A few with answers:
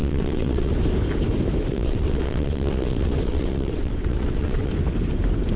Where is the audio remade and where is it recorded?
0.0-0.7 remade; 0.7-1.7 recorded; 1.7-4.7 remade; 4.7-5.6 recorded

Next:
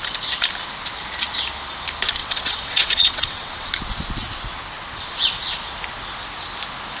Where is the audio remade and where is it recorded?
0.0-2.2 recorded; 2.2-3.7 remade; 3.7-7.0 recorded

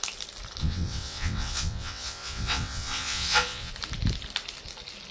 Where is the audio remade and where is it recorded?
0.0-0.6 recorded; 0.6-3.7 remade; 3.7-5.1 recorded

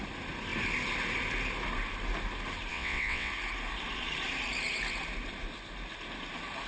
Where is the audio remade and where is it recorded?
0.0-2.7 recorded; 2.7-3.3 remade; 3.3-6.7 recorded

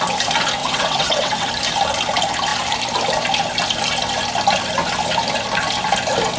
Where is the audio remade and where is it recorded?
0.0-0.6 recorded; 0.6-1.5 remade; 1.5-6.4 recorded

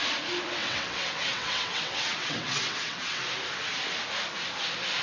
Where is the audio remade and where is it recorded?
0.0-0.6 recorded; 0.6-3.2 remade; 3.2-5.0 recorded

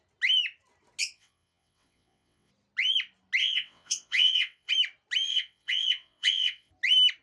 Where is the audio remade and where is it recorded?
0.0-1.0 recorded; 1.0-2.5 remade; 2.5-3.4 recorded; 3.4-4.7 remade; 4.7-5.3 recorded; 5.3-6.7 remade; 6.7-7.2 recorded